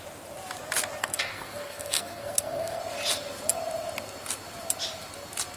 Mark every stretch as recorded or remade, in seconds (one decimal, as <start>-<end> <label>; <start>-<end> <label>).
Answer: 0.0-1.0 recorded; 1.0-2.8 remade; 2.8-5.6 recorded